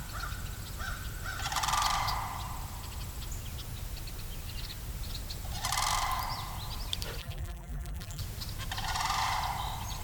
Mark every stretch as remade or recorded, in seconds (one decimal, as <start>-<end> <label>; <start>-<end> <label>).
0.0-7.2 recorded; 7.2-8.2 remade; 8.2-10.0 recorded